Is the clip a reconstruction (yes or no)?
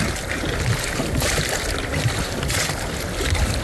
no